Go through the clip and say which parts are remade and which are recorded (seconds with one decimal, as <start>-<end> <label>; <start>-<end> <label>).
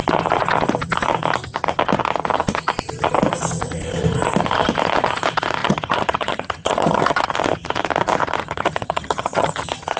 0.0-5.6 recorded; 5.6-7.2 remade; 7.2-8.4 recorded; 8.4-9.6 remade; 9.6-10.0 recorded